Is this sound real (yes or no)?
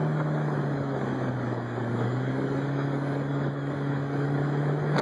no